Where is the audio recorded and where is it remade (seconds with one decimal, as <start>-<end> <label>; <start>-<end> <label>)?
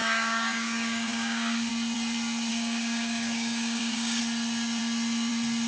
0.0-1.7 remade; 1.7-2.5 recorded; 2.5-4.2 remade; 4.2-5.7 recorded